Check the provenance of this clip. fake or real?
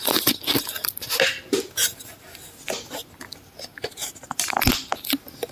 real